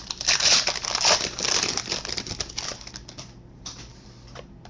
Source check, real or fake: real